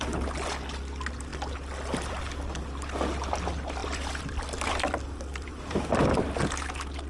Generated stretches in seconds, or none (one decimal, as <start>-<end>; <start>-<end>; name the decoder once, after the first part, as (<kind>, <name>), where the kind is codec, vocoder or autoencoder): 3.8-5.8 (vocoder, BigVGAN v2)